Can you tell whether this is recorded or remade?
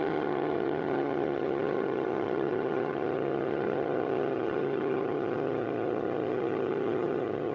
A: remade